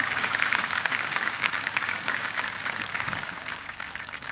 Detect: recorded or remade remade